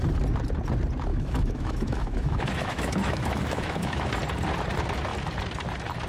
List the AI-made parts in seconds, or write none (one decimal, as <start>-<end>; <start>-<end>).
1.1-4.1